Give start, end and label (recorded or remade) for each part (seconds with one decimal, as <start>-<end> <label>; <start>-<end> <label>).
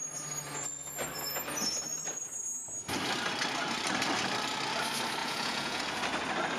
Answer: 0.0-5.2 recorded; 5.2-5.8 remade; 5.8-6.6 recorded